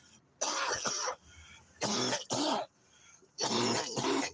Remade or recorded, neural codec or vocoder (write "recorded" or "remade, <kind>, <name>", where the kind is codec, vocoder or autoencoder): recorded